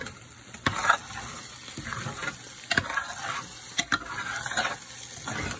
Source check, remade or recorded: recorded